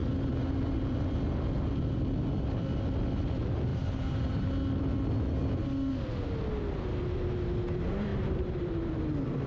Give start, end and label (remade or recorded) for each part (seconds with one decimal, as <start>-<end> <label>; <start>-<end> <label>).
0.0-3.7 recorded; 3.7-4.5 remade; 4.5-8.1 recorded; 8.1-8.9 remade; 8.9-9.5 recorded